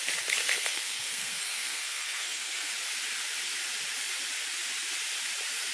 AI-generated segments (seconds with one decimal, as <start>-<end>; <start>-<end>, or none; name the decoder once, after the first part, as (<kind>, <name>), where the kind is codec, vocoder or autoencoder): 0.4-2.7 (codec, SNAC)